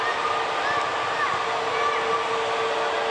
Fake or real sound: real